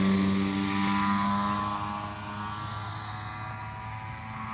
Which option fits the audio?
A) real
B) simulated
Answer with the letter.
A